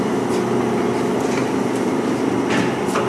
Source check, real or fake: real